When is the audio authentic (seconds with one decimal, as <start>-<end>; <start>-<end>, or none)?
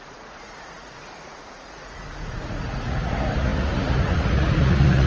none